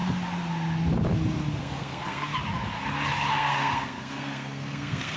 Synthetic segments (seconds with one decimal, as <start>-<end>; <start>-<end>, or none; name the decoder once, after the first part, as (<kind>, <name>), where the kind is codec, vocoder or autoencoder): 1.6-2.3 (codec, SNAC); 3.3-5.2